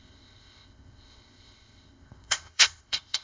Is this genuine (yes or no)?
no